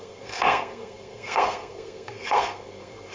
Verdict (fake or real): fake